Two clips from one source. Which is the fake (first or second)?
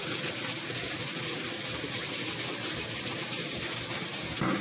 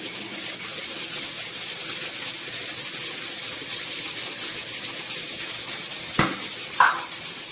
first